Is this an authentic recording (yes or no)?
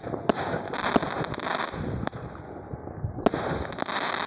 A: yes